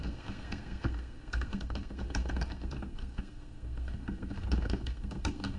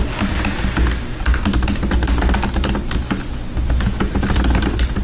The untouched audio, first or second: second